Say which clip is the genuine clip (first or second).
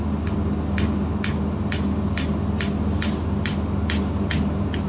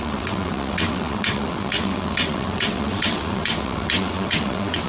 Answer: first